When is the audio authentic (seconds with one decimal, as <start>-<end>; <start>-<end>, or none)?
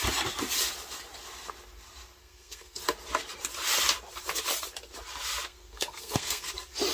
0.0-2.2; 2.8-5.5; 6.5-6.9